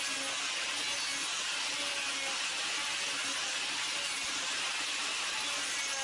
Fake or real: real